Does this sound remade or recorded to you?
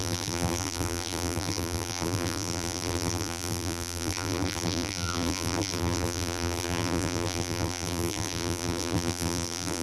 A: remade